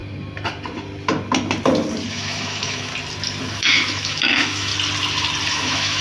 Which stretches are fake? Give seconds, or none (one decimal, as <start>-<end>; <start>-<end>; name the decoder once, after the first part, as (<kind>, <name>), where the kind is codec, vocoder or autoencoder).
2.1-2.9 (autoencoder, DAC-VAE); 3.4-4.7; 5.5-6.0